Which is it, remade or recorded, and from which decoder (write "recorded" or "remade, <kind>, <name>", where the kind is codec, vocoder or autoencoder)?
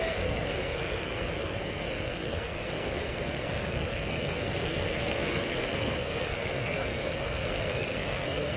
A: remade, codec, SNAC